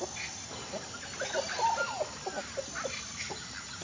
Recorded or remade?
recorded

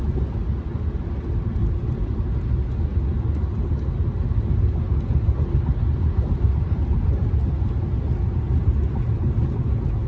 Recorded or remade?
recorded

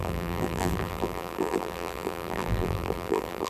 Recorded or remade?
remade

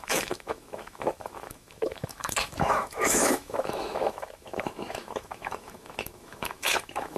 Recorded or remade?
remade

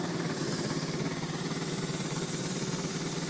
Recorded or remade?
recorded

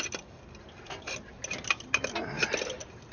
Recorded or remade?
recorded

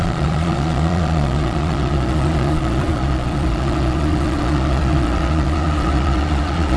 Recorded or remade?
remade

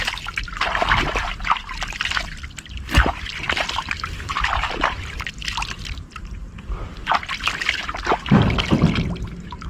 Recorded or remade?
recorded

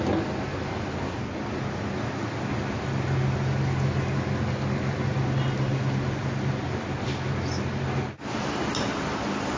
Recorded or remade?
recorded